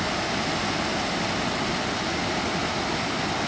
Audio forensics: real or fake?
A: real